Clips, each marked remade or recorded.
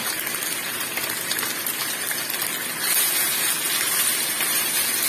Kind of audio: recorded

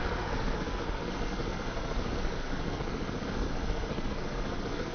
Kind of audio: remade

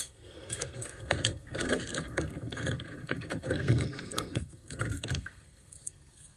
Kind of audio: remade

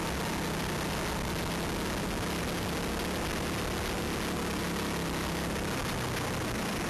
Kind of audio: recorded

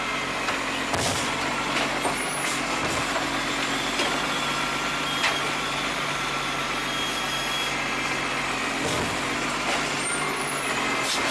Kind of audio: recorded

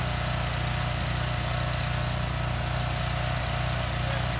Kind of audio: recorded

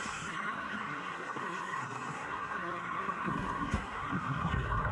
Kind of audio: remade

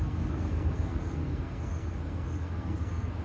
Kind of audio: remade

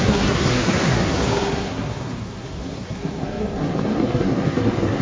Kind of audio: remade